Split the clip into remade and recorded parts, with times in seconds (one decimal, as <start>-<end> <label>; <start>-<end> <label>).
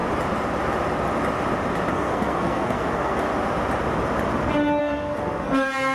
0.0-1.9 recorded; 1.9-3.3 remade; 3.3-4.8 recorded; 4.8-5.9 remade